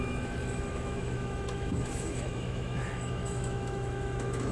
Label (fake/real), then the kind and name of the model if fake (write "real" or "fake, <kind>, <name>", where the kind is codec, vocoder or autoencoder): fake, autoencoder, DAC-VAE